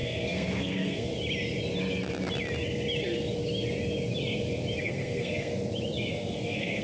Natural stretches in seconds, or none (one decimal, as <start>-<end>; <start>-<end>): 1.1-4.8; 5.5-6.1